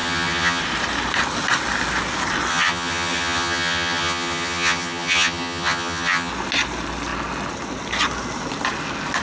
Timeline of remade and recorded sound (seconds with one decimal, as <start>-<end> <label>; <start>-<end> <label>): 0.0-0.6 remade; 0.6-2.5 recorded; 2.5-6.3 remade; 6.3-9.2 recorded